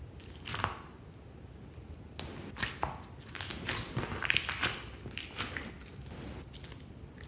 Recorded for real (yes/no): yes